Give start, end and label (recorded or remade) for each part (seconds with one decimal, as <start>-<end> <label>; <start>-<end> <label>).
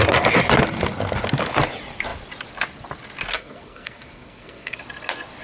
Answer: 0.0-3.3 recorded; 3.3-4.8 remade; 4.8-5.4 recorded